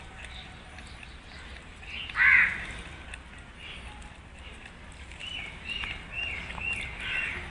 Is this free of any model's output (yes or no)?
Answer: yes